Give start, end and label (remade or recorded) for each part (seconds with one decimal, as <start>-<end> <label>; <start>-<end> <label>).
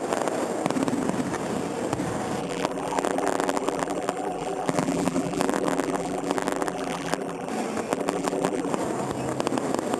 0.0-2.4 recorded; 2.4-7.5 remade; 7.5-7.9 recorded; 7.9-8.7 remade; 8.7-10.0 recorded